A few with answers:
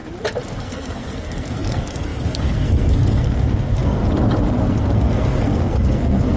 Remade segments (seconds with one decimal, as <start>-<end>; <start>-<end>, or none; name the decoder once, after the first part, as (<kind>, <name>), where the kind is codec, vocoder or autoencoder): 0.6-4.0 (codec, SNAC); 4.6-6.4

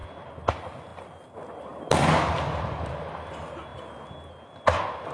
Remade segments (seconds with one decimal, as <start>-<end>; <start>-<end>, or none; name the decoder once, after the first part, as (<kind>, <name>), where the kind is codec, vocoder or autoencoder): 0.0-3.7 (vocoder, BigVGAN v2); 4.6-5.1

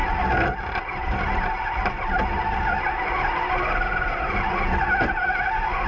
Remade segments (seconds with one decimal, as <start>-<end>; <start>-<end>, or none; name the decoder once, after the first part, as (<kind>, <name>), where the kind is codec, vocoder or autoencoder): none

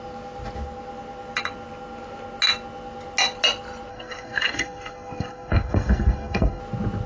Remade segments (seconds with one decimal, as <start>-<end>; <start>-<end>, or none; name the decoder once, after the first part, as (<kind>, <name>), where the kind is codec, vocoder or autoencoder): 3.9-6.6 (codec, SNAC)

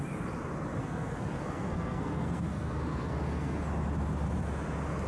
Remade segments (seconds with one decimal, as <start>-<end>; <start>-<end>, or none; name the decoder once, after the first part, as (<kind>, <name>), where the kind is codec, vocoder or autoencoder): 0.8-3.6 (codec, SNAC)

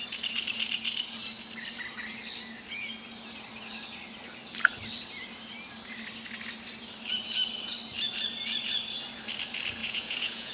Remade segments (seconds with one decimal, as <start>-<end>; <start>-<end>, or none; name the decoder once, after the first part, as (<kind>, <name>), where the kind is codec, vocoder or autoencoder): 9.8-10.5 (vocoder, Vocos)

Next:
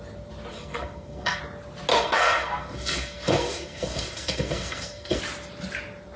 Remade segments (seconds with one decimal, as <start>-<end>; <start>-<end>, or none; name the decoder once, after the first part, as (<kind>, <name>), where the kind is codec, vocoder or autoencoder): 0.5-1.4 (codec, SNAC); 1.9-5.2